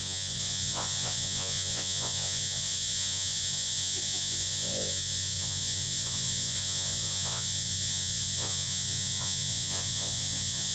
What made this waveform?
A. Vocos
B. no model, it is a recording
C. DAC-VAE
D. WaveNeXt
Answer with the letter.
A